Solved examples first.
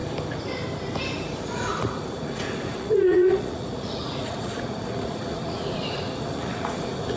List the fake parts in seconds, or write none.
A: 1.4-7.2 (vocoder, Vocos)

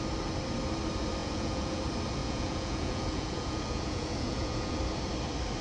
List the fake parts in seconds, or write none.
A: 1.2-1.8 (vocoder, Vocos); 2.2-4.7

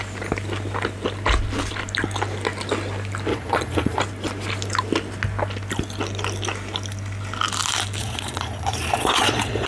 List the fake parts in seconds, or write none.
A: 3.3-4.0 (vocoder, Vocos); 8.0-9.7

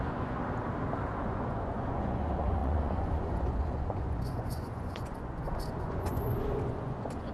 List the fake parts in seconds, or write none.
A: 0.0-0.4 (vocoder, Vocos); 1.2-7.3

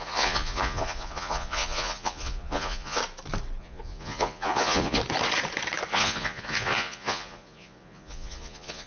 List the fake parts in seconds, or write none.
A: 0.0-3.0 (vocoder, Vocos); 3.6-5.0; 5.9-8.9

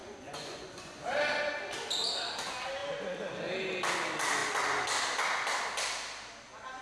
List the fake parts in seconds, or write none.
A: 0.0-1.0 (vocoder, Vocos)

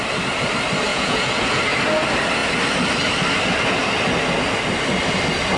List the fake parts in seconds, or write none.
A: 0.9-1.6 (vocoder, Vocos)